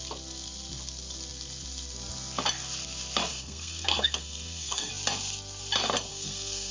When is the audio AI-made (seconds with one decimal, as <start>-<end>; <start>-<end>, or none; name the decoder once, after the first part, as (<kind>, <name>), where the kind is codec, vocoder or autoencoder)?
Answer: 3.3-4.9 (codec, SNAC); 6.1-6.7